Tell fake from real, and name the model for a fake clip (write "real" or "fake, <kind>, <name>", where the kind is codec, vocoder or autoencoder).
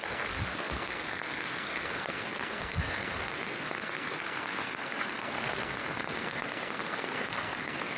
fake, codec, SNAC